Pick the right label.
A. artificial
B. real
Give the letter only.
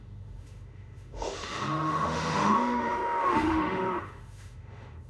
A